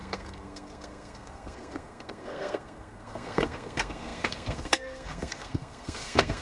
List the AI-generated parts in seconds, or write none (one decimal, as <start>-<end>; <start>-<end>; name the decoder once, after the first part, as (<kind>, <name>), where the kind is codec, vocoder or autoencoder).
0.0-6.4 (codec, SNAC)